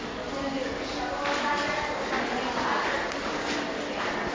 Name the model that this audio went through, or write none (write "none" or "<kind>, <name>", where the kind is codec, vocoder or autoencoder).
none